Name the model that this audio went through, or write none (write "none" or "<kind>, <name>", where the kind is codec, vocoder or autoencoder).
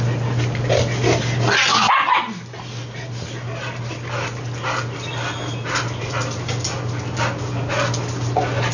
none